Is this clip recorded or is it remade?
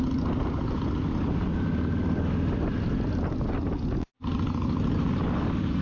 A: recorded